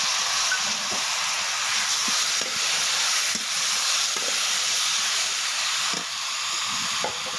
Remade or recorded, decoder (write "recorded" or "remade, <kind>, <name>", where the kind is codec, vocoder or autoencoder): recorded